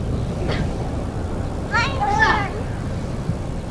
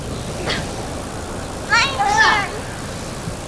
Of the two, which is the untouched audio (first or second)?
second